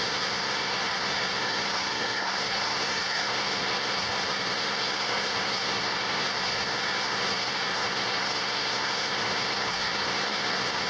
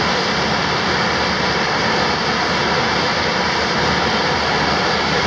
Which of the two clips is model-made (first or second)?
first